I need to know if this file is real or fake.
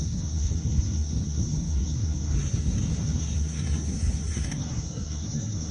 fake